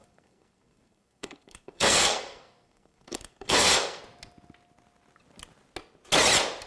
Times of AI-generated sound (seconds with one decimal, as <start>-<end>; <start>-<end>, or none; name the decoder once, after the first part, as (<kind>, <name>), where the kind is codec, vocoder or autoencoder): 0.0-4.0 (codec, SNAC)